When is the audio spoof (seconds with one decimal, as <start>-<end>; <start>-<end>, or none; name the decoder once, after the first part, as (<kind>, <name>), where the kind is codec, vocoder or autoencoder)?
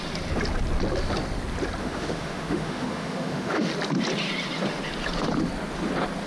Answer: 1.8-3.7 (autoencoder, DAC-VAE)